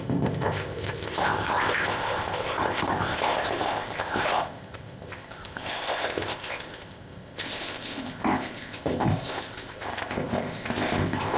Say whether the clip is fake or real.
fake